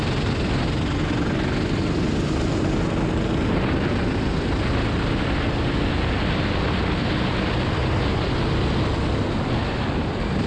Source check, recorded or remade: recorded